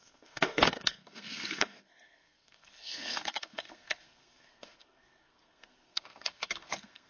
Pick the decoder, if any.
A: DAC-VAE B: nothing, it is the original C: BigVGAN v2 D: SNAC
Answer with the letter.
D